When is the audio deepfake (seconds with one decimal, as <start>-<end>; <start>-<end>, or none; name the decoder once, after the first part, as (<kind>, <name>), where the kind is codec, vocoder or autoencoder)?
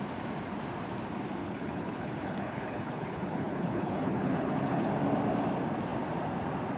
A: 1.4-4.9 (codec, HILCodec)